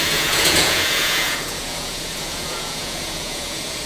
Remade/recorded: remade